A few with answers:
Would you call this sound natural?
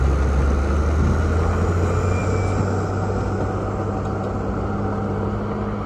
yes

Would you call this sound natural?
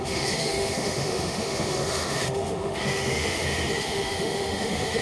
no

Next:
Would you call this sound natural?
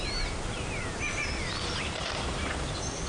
yes